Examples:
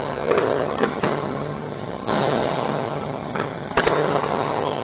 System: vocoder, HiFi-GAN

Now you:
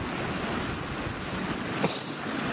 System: none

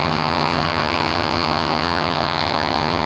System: vocoder, HiFi-GAN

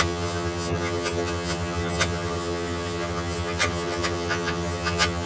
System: vocoder, HiFi-GAN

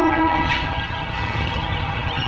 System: vocoder, HiFi-GAN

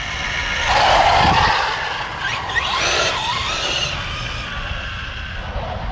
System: none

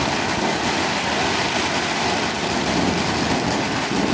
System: none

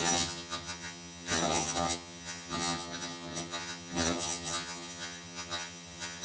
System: vocoder, HiFi-GAN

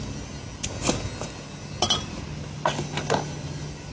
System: none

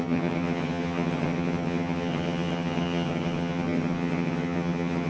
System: vocoder, HiFi-GAN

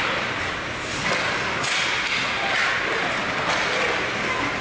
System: none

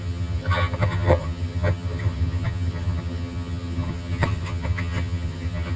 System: vocoder, HiFi-GAN